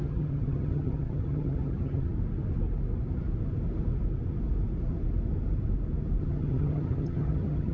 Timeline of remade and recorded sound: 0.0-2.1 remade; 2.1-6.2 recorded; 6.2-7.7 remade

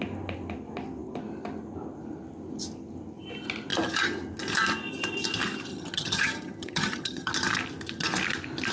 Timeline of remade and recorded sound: 0.0-5.7 recorded; 5.7-7.3 remade; 7.3-8.7 recorded

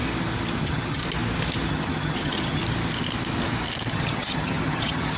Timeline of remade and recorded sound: 0.0-0.6 recorded; 0.6-1.0 remade; 1.0-1.7 recorded; 1.7-2.6 remade; 2.6-3.9 recorded; 3.9-5.2 remade